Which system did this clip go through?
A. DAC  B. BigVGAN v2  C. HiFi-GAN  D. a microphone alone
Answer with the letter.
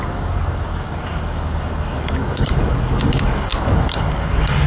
A